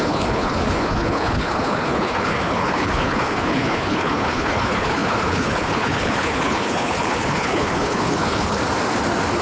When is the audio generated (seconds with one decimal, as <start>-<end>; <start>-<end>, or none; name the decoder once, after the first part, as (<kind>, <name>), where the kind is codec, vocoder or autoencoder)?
0.0-8.6 (codec, HILCodec)